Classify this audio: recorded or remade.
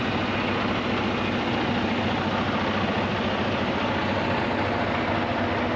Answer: recorded